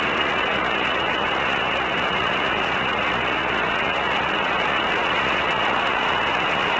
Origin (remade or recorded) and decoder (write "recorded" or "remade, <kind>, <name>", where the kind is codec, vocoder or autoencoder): remade, vocoder, Vocos